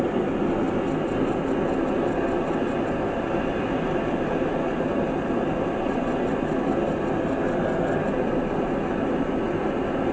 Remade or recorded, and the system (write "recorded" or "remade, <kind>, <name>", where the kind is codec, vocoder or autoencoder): recorded